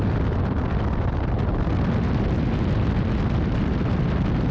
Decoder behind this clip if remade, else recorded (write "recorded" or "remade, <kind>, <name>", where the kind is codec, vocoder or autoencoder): recorded